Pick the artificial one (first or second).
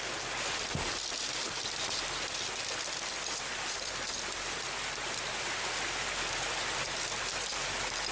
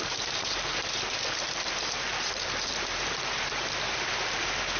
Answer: second